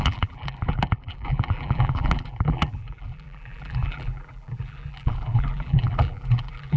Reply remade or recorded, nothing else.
remade